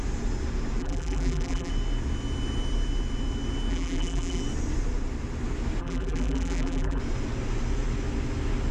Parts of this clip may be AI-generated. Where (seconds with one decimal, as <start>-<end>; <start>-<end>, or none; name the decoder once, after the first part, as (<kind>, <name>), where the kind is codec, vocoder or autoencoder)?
0.8-1.7 (vocoder, BigVGAN v2); 3.7-4.4; 5.8-7.0